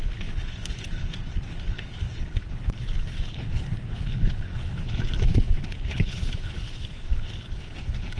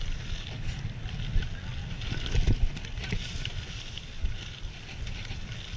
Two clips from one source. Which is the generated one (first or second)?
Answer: first